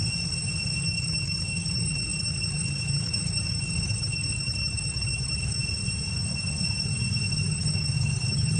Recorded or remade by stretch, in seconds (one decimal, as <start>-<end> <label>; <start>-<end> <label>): 0.0-0.8 recorded; 0.8-5.6 remade; 5.6-7.5 recorded; 7.5-8.6 remade